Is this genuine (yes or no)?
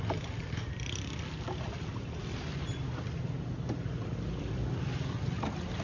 yes